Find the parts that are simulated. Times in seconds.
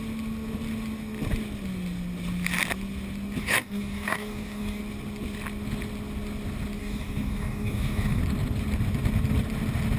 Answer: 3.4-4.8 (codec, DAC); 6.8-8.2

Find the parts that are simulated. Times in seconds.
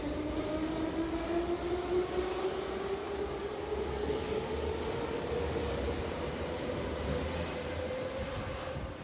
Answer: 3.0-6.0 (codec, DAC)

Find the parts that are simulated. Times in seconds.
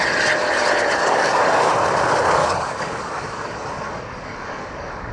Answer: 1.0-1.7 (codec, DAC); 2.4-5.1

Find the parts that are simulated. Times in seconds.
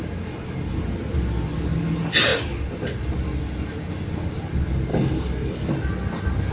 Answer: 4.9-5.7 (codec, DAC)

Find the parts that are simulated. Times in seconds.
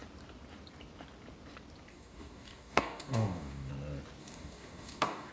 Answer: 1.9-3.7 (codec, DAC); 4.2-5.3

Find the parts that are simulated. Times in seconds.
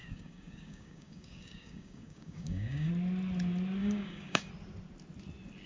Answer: 0.0-2.9 (codec, DAC); 3.8-4.5